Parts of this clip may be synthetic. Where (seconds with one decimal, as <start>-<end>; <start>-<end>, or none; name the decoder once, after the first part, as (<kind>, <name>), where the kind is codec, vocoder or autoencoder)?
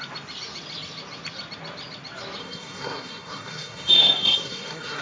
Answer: 2.4-5.0 (codec, SNAC)